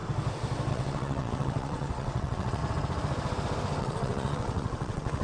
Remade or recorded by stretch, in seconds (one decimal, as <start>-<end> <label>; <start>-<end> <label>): 0.0-0.7 recorded; 0.7-2.6 remade; 2.6-3.8 recorded; 3.8-5.2 remade